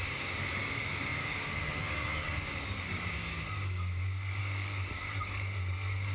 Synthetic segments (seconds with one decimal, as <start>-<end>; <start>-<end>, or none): 0.0-6.1